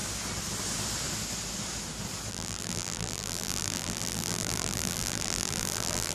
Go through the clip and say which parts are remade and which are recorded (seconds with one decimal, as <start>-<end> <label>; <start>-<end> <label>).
0.0-2.3 recorded; 2.3-6.1 remade